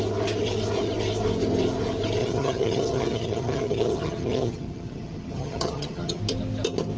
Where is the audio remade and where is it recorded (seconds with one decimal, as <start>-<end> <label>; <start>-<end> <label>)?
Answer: 0.0-2.2 recorded; 2.2-6.2 remade; 6.2-7.0 recorded